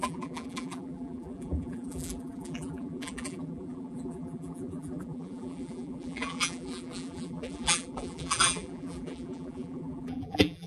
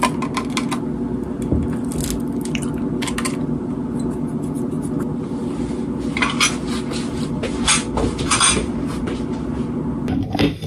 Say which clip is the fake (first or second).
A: first